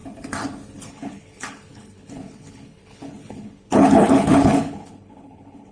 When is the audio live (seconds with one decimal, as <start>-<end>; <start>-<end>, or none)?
0.0-0.9